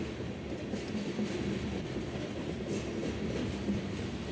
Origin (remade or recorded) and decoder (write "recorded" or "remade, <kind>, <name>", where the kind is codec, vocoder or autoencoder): recorded